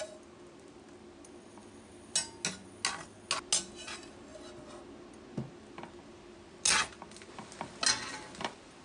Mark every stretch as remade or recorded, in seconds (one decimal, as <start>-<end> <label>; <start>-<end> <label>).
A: 0.0-8.8 recorded